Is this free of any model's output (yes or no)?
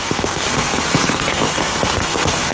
no